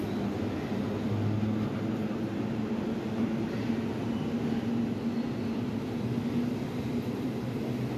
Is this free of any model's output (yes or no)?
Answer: yes